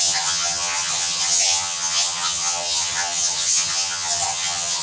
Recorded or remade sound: remade